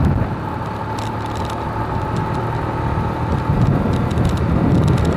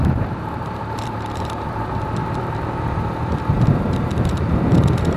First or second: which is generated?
second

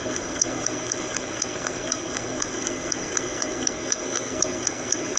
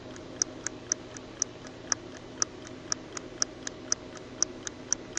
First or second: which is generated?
first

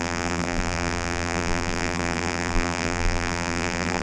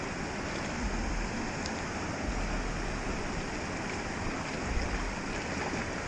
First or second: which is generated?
first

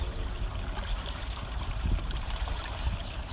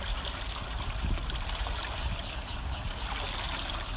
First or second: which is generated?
first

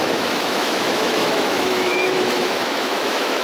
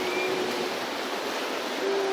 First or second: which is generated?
first